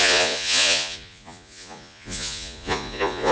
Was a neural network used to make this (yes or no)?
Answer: yes